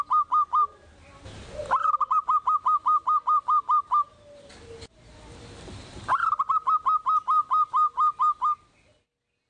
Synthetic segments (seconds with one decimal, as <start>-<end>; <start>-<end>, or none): none